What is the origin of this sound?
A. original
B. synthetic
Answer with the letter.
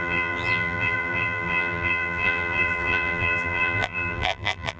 B